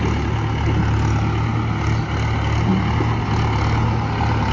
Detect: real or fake real